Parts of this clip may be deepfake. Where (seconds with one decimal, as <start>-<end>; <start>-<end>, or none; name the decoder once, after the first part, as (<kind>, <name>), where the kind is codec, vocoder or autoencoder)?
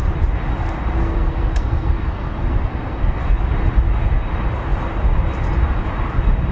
1.0-3.2 (codec, SNAC)